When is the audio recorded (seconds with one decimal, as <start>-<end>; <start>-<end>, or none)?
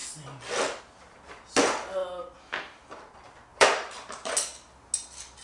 0.0-3.5; 4.3-5.4